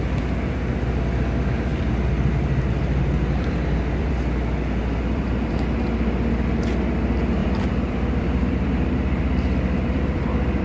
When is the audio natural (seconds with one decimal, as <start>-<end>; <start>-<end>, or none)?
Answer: 0.0-1.7; 5.5-7.4